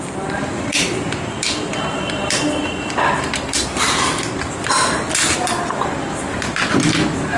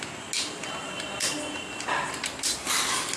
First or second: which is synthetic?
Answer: first